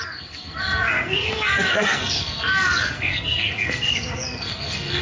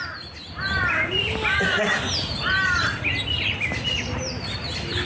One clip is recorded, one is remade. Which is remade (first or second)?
first